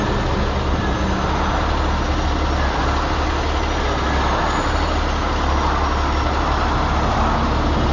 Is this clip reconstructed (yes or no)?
no